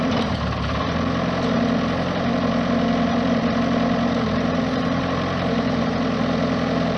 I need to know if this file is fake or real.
fake